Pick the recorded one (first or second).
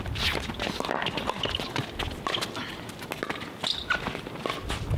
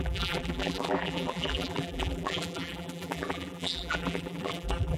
first